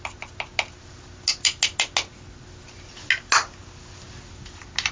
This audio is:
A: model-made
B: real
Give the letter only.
B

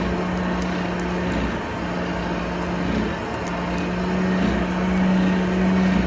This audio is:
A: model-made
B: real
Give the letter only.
B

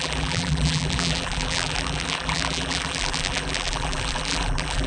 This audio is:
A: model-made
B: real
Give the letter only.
A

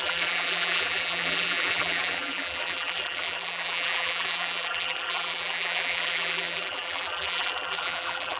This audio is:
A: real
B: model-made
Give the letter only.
B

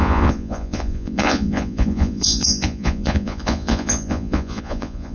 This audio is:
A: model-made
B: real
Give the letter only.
A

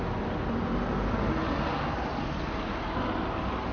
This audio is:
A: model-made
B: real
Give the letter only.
B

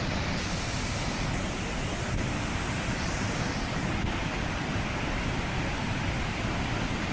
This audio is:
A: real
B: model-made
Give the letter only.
A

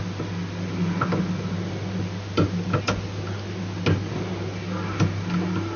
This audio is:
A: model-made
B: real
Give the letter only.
B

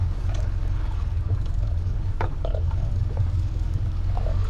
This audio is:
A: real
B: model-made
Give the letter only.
B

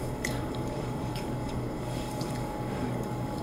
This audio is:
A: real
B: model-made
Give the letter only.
B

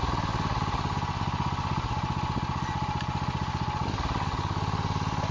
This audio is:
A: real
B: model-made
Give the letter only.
A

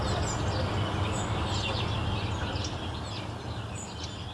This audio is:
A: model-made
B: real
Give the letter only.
B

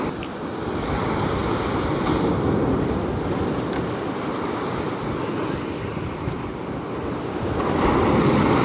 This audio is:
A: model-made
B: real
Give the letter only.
B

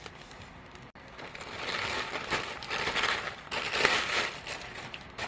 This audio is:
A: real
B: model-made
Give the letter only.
A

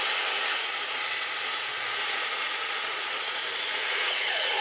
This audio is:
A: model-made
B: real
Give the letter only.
A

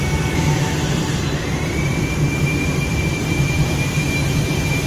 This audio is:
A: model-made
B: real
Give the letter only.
A